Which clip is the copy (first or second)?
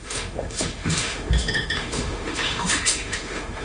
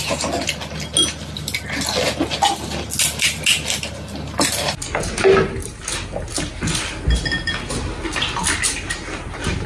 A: first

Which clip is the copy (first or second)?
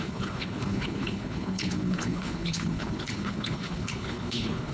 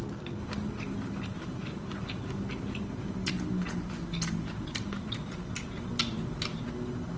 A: first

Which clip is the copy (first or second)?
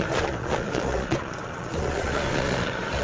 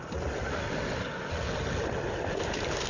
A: first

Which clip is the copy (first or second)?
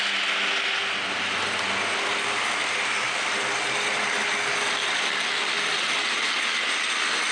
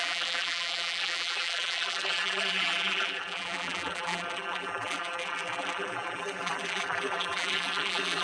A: second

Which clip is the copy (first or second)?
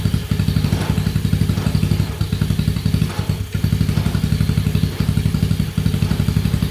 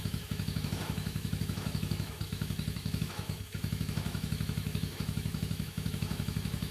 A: second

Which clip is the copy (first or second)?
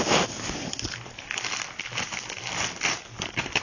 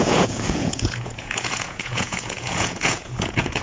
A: second